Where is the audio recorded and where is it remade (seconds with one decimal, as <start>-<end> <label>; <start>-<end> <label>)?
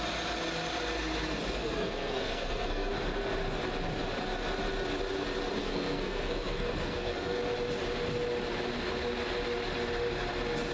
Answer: 0.0-1.6 recorded; 1.6-2.9 remade; 2.9-5.6 recorded; 5.6-7.4 remade; 7.4-10.7 recorded